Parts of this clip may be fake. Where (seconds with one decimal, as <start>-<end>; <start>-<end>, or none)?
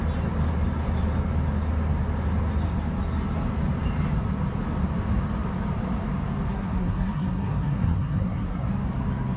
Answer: 6.5-8.7